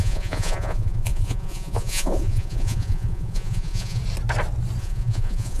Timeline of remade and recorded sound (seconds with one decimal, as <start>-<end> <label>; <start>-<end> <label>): 0.0-4.0 remade; 4.0-4.8 recorded; 4.8-5.6 remade